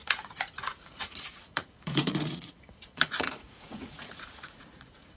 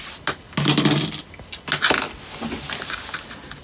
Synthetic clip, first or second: first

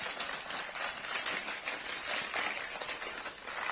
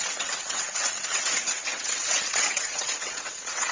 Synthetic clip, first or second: second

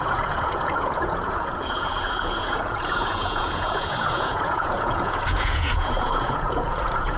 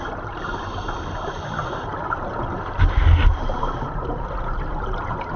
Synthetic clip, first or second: first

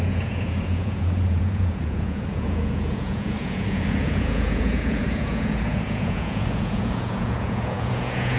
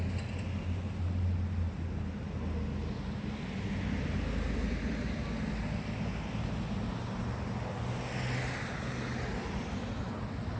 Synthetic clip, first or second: first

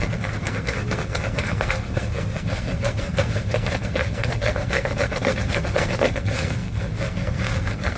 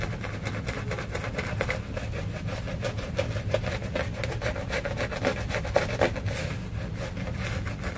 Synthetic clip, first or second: first